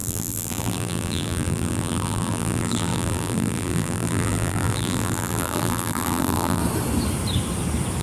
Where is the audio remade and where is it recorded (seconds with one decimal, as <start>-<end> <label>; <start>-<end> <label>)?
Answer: 0.0-6.6 remade; 6.6-8.0 recorded